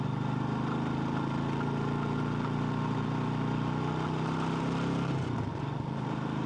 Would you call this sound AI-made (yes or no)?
no